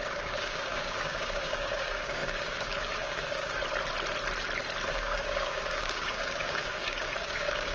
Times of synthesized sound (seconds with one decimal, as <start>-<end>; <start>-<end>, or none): 0.0-3.6; 4.9-7.7